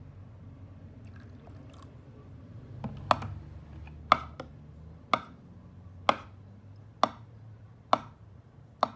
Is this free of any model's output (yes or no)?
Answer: yes